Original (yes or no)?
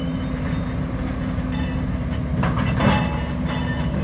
yes